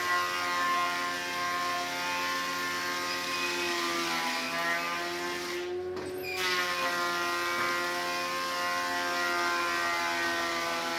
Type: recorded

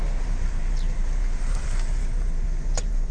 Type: remade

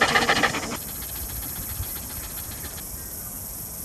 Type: remade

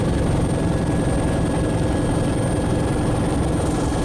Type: recorded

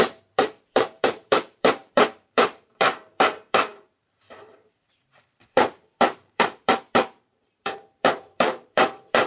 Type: remade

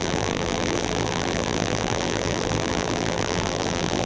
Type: remade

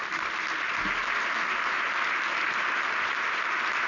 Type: recorded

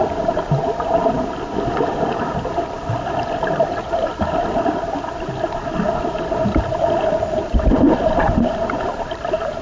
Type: remade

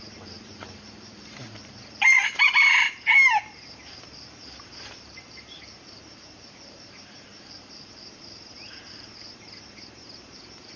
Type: remade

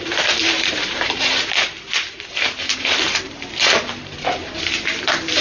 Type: remade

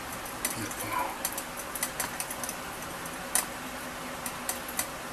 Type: recorded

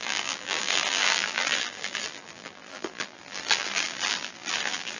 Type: remade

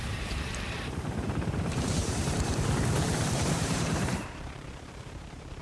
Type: remade